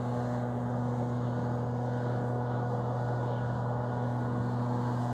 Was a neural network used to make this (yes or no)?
no